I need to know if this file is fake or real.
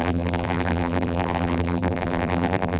fake